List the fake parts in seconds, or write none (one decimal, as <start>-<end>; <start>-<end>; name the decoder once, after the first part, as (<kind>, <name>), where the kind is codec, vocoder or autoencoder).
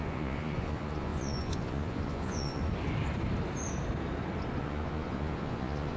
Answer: 0.0-2.6 (vocoder, Vocos); 4.6-6.0